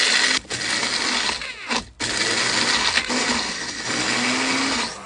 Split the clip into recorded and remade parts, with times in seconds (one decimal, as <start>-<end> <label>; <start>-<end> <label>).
0.0-5.1 recorded